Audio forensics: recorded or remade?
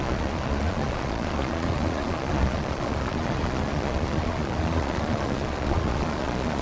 remade